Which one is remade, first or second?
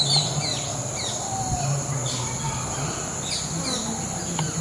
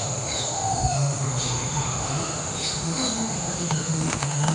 second